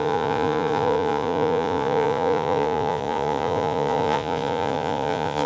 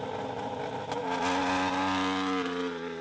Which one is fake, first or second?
first